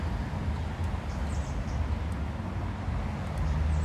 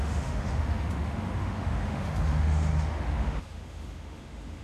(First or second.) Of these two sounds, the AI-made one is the second